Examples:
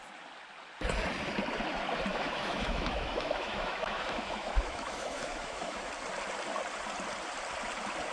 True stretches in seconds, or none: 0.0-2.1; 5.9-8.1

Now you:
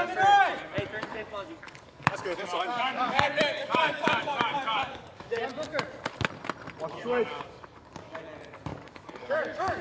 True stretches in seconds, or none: 0.0-1.1; 5.4-7.0; 8.2-8.7